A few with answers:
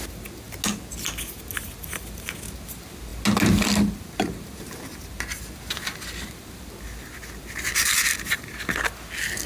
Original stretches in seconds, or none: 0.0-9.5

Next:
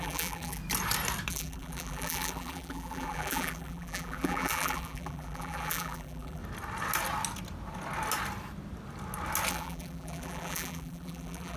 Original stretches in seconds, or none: 0.6-1.3; 6.4-9.5

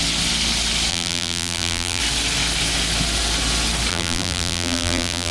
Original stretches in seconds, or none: 0.0-0.9; 2.0-3.9

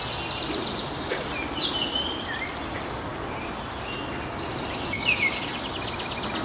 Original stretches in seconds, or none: 0.0-0.6; 1.7-6.4